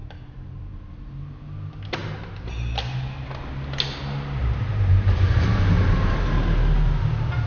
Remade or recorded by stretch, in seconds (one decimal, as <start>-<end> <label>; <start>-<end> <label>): 0.0-0.9 remade; 0.9-2.0 recorded; 2.0-2.5 remade; 2.5-4.4 recorded; 4.4-6.1 remade; 6.1-7.5 recorded